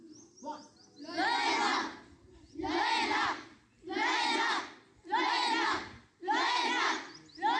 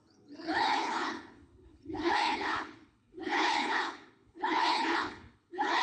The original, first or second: first